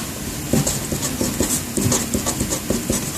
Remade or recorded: recorded